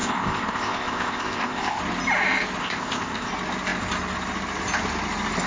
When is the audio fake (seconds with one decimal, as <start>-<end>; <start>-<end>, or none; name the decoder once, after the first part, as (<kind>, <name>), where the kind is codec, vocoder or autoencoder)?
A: 0.0-1.8 (codec, ZipCodec); 2.6-3.3